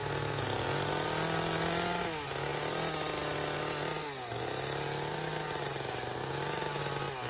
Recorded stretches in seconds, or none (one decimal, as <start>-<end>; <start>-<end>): 0.0-7.3